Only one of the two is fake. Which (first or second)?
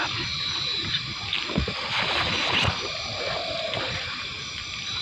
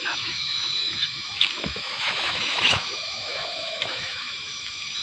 second